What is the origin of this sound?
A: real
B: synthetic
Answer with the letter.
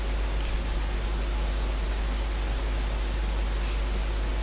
A